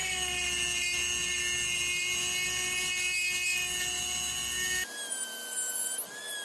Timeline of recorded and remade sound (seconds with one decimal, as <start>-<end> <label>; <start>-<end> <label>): 0.0-6.4 recorded